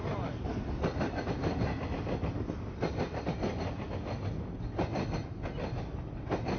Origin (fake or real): real